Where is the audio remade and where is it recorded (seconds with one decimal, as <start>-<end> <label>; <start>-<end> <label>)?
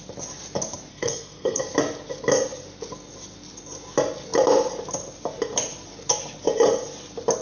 0.0-0.9 recorded; 0.9-1.6 remade; 1.6-7.4 recorded